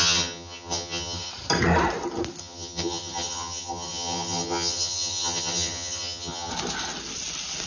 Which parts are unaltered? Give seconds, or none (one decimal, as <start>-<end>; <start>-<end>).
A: 1.3-2.4; 6.5-7.7